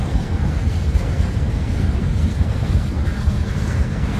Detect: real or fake fake